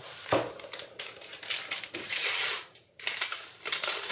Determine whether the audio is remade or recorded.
remade